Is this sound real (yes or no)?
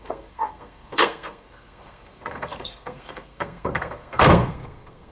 no